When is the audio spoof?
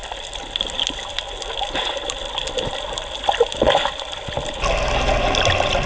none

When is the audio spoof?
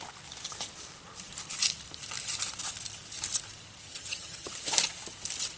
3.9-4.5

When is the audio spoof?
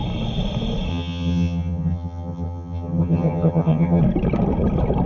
0.9-4.0